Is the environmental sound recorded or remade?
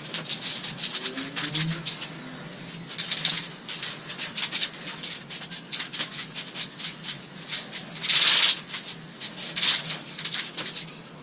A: recorded